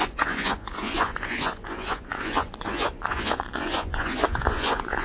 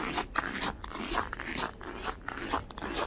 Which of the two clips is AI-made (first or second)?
first